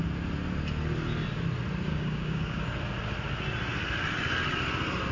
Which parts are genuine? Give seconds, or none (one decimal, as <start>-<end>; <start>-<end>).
0.0-1.9; 2.6-5.1